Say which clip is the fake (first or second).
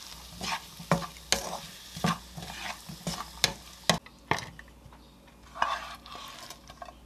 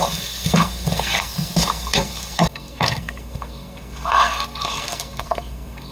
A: second